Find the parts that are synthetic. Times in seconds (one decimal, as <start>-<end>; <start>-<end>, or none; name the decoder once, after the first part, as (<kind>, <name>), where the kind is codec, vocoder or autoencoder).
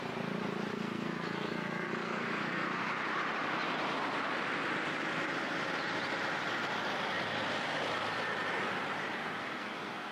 0.7-2.9 (codec, SNAC); 9.2-10.1